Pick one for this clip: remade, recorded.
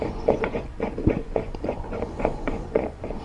remade